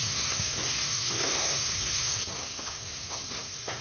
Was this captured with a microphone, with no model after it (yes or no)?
no